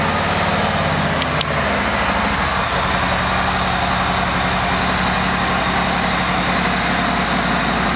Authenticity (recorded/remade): recorded